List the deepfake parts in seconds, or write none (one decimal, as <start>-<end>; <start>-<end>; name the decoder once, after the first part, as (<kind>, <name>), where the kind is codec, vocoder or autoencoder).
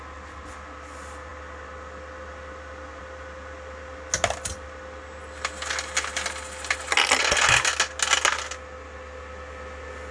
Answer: none